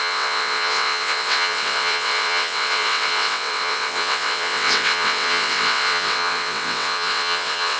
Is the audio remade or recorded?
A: remade